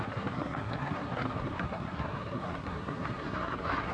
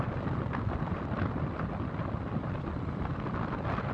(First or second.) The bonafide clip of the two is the second